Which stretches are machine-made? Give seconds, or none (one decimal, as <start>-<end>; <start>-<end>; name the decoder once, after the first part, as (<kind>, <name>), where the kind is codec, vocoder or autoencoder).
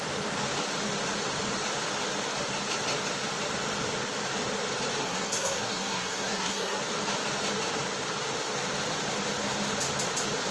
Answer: 5.0-6.8 (codec, SNAC)